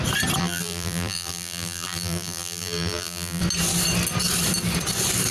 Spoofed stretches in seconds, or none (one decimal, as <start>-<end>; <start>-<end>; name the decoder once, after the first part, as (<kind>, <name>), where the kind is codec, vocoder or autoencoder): 0.4-3.4 (vocoder, BigVGAN v2)